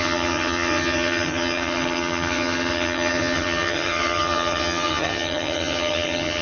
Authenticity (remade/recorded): remade